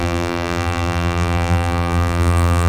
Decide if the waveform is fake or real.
fake